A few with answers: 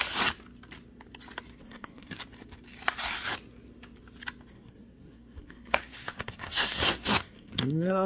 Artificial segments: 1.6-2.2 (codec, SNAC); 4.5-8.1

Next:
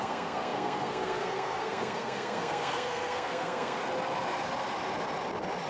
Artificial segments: 0.0-3.8 (codec, SNAC)